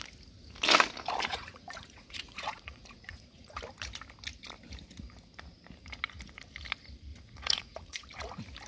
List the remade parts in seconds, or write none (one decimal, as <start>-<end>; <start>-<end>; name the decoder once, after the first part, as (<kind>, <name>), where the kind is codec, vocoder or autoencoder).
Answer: 1.3-3.6 (vocoder, Vocos); 7.1-8.1

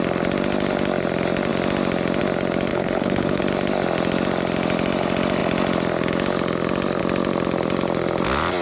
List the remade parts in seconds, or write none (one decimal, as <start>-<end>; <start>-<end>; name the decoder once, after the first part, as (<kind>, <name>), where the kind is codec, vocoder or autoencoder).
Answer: 2.7-3.4 (codec, HILCodec)

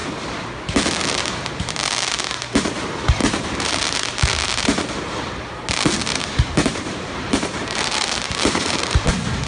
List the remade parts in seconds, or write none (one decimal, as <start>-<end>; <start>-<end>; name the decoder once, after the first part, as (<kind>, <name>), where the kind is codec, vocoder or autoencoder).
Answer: 0.0-0.5 (vocoder, BigVGAN v2); 3.2-3.8; 6.1-9.1

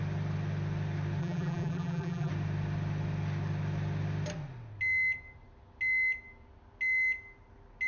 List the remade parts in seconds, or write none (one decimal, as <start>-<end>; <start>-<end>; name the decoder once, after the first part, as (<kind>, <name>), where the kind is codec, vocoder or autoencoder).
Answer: 1.2-2.3 (vocoder, BigVGAN v2)

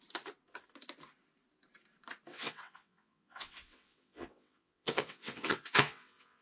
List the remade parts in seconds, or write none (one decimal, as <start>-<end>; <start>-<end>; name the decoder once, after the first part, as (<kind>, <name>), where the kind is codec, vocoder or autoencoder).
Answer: 2.3-6.4 (vocoder, WaveNeXt)